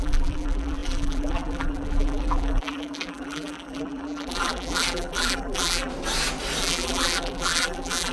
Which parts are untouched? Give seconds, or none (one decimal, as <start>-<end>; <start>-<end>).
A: 5.9-6.6